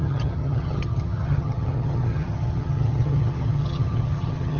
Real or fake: fake